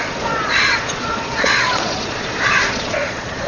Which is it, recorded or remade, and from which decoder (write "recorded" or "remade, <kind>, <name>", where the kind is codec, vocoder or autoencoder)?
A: remade, vocoder, Vocos